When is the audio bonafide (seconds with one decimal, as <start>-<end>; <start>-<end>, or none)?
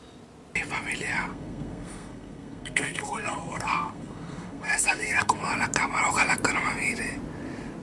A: 0.0-1.3; 5.5-7.8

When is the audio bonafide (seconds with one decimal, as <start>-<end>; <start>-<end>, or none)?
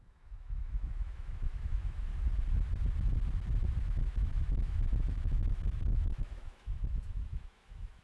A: 2.1-3.8